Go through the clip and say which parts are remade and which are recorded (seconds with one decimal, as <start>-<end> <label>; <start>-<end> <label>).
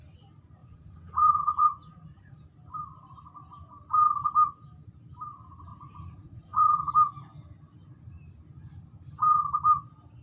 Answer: 0.0-0.6 recorded; 0.6-2.4 remade; 2.4-5.7 recorded; 5.7-6.9 remade; 6.9-10.2 recorded